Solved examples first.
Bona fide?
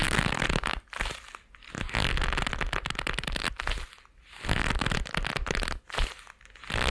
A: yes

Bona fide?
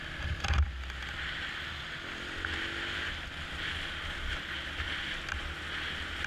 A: yes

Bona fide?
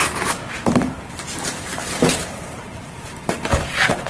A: no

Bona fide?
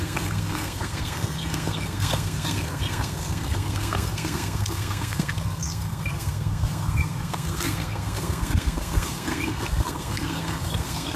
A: no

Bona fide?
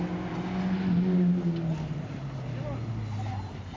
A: yes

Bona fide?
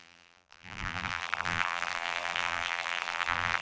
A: no